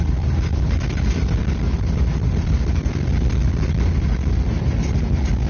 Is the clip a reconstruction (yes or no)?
no